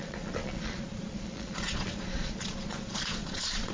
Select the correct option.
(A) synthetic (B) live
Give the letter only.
A